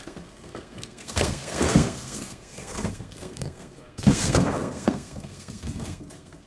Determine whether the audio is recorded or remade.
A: remade